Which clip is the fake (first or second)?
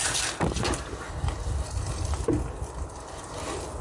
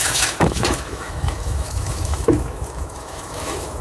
second